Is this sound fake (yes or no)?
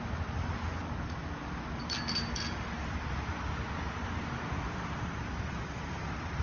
no